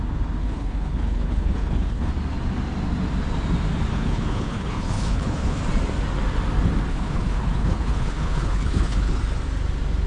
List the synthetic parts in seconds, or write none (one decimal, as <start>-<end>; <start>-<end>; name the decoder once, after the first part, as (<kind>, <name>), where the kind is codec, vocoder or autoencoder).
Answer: 0.4-2.1 (codec, HILCodec); 3.9-5.6; 6.9-9.2